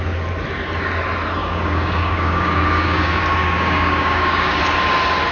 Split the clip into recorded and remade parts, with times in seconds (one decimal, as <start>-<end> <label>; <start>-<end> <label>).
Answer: 0.0-1.4 recorded; 1.4-4.6 remade; 4.6-5.3 recorded